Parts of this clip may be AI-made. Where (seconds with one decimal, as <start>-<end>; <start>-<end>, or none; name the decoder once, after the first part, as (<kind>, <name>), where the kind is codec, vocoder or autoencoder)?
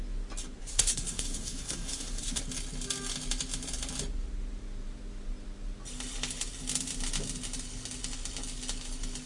0.6-2.4 (codec, SNAC)